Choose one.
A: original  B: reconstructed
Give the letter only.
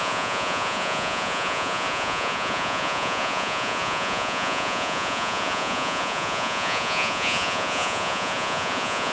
B